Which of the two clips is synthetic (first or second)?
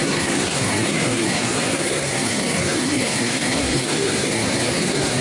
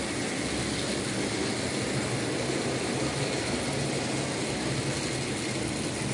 first